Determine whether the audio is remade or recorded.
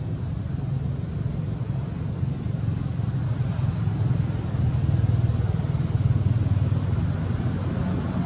recorded